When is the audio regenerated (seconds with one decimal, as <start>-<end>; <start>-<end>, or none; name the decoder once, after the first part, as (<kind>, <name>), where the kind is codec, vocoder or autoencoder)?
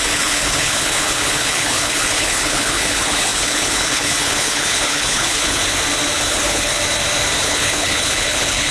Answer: 0.0-5.6 (codec, HILCodec); 6.2-6.7; 7.4-8.7